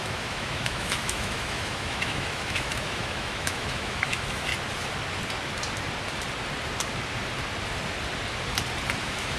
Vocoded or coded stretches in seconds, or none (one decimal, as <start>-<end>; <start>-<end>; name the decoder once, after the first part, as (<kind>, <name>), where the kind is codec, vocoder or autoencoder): 0.0-4.5 (autoencoder, DAC-VAE); 9.0-9.4